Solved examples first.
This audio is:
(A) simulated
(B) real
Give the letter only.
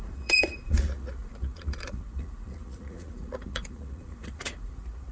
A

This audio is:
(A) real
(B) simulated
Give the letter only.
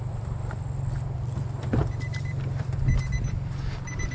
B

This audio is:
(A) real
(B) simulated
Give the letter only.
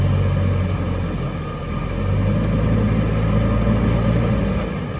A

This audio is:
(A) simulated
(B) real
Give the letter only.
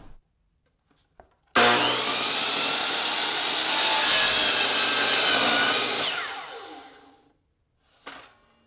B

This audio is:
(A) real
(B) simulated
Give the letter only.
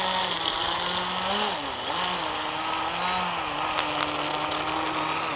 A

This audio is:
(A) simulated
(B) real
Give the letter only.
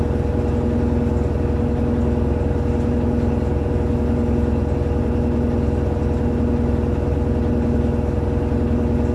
B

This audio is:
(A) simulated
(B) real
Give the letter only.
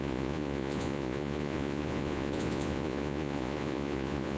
A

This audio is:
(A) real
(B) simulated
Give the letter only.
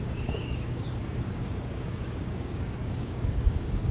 B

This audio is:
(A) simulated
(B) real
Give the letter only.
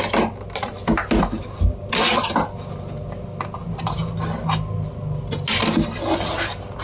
B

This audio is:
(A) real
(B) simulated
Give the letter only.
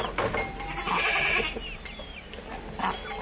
A